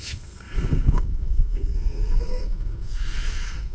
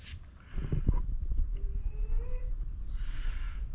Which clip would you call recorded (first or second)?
second